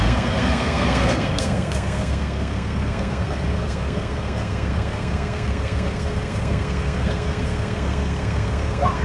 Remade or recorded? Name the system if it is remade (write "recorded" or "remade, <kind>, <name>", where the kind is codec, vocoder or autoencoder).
remade, codec, SNAC